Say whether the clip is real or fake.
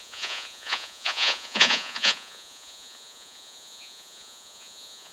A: fake